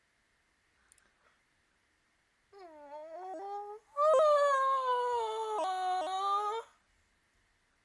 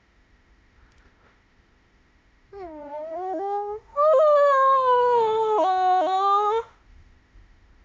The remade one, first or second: second